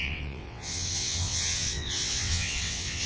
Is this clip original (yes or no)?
no